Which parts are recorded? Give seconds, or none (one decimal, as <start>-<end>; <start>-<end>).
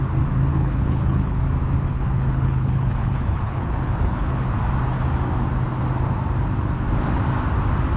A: 0.0-0.5; 1.4-1.9; 4.4-8.0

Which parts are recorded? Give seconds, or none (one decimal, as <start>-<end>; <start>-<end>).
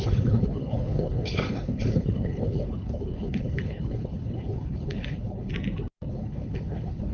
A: 5.5-6.1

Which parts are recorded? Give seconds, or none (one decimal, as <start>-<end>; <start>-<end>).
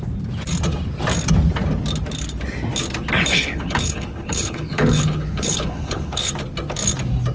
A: 0.0-3.3; 6.3-7.3